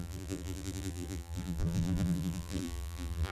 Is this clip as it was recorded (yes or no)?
no